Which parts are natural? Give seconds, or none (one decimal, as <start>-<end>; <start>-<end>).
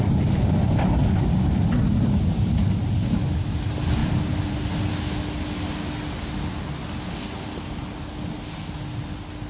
0.0-9.5